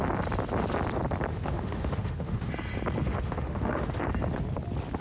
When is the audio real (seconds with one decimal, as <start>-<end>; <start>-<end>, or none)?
0.0-1.3; 2.5-3.1; 4.1-5.0